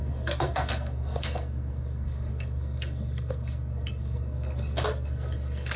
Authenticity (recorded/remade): remade